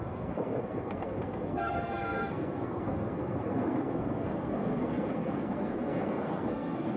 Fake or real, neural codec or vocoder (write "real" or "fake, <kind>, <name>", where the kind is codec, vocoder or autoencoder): fake, codec, SNAC